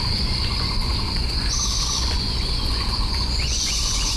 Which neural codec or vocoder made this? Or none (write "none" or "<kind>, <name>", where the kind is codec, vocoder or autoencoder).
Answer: vocoder, Vocos